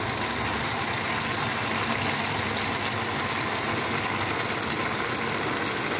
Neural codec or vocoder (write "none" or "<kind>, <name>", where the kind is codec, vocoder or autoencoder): none